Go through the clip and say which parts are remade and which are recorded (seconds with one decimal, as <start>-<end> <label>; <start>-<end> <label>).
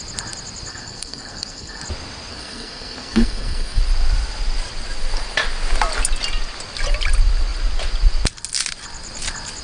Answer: 0.0-0.7 recorded; 0.7-1.8 remade; 1.8-2.3 recorded; 2.3-3.8 remade; 3.8-9.6 recorded